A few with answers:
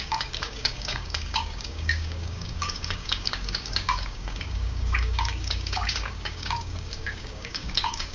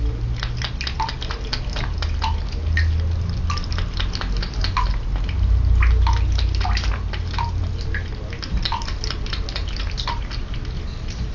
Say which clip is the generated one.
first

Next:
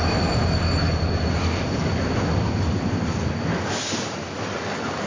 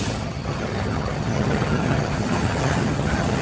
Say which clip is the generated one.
second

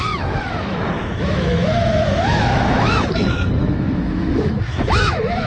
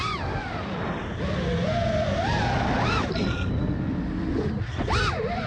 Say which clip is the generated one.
first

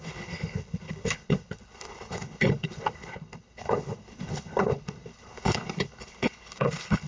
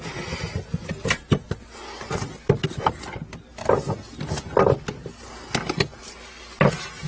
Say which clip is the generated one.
first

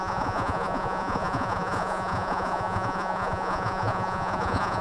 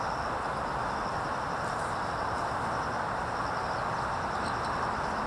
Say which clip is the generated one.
first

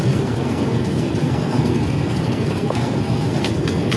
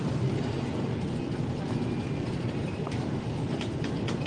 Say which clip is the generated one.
first